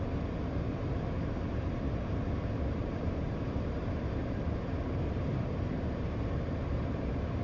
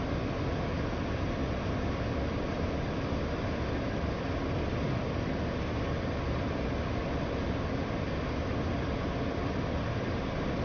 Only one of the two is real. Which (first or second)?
second